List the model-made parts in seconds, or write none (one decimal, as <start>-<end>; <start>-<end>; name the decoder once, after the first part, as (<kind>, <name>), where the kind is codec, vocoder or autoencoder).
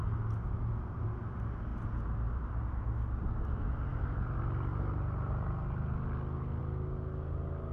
none